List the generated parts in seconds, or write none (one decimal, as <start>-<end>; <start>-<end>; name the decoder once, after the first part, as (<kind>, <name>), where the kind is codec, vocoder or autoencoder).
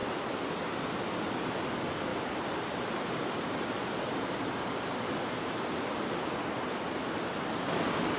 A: 2.1-5.1 (vocoder, BigVGAN v2)